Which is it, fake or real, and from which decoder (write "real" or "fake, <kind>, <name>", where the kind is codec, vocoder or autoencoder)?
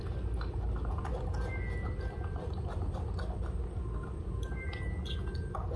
real